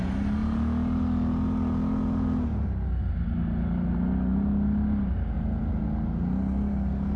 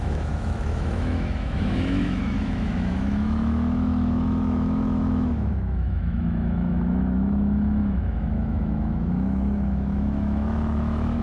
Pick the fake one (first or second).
second